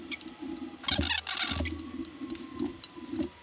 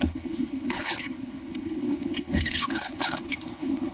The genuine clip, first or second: first